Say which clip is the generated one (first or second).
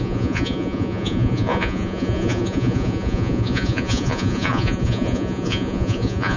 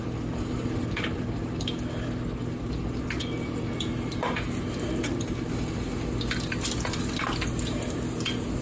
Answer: first